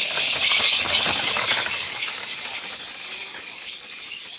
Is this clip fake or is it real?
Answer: fake